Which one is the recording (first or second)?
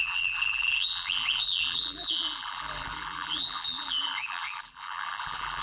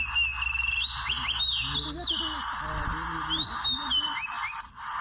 second